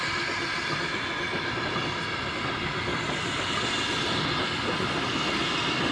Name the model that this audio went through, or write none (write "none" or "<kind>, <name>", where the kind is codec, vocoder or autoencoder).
none